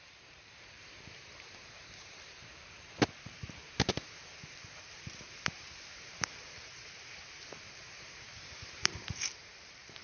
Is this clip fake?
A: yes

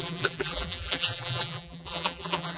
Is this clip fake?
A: yes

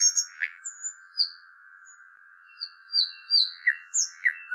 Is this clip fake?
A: yes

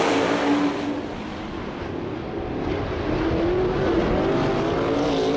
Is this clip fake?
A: no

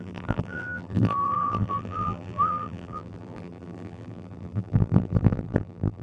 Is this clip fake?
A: yes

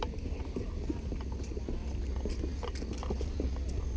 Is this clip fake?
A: no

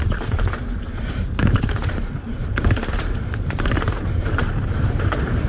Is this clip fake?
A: yes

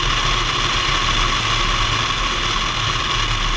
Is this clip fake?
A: no